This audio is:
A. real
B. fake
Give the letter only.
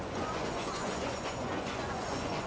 B